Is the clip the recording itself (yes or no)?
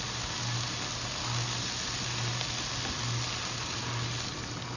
yes